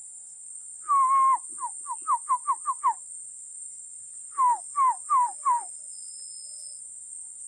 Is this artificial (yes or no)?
no